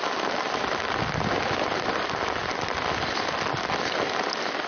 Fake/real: real